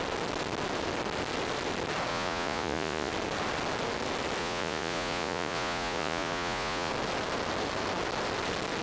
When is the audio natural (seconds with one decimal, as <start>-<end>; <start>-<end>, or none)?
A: 0.0-2.1; 3.1-4.4; 6.9-8.8